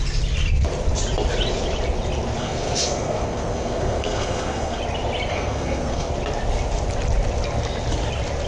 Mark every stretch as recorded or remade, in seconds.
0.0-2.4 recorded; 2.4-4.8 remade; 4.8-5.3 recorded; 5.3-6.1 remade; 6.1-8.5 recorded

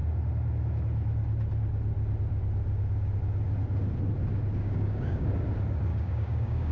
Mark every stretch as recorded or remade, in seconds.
0.0-4.6 recorded; 4.6-5.3 remade; 5.3-5.9 recorded; 5.9-6.7 remade

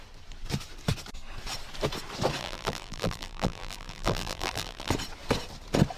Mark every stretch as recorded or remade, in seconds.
0.0-2.4 recorded; 2.4-4.9 remade; 4.9-6.0 recorded

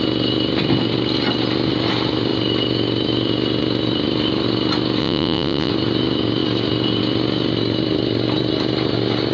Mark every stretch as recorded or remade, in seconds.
0.0-5.0 recorded; 5.0-5.7 remade; 5.7-9.3 recorded

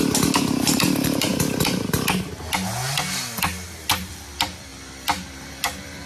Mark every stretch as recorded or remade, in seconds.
0.0-1.3 remade; 1.3-3.9 recorded; 3.9-4.7 remade; 4.7-5.5 recorded; 5.5-6.1 remade

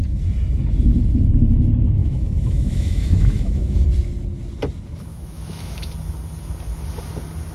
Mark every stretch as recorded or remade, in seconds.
0.0-2.0 recorded; 2.0-3.8 remade; 3.8-5.1 recorded; 5.1-5.9 remade; 5.9-7.5 recorded

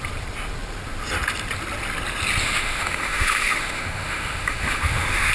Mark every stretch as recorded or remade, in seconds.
0.0-2.4 recorded; 2.4-5.3 remade

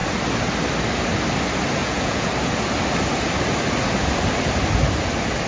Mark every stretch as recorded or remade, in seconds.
0.0-1.8 recorded; 1.8-2.3 remade; 2.3-5.5 recorded